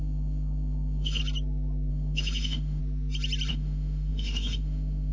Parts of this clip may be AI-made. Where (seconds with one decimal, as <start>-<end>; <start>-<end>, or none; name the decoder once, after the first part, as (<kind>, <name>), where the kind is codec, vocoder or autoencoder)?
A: 0.0-1.2 (autoencoder, DAC-VAE); 1.9-2.8; 3.5-5.1